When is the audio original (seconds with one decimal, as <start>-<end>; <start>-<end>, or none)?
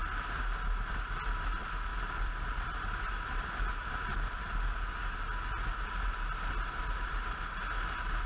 1.1-1.9; 3.9-8.3